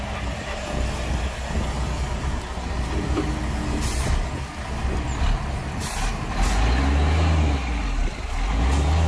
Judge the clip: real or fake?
real